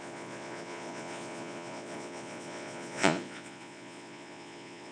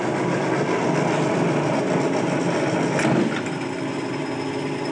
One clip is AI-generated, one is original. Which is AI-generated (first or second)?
first